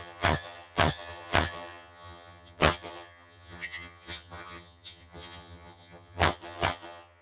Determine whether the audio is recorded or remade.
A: remade